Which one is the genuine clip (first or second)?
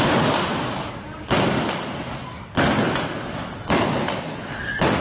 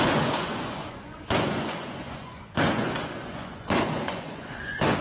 first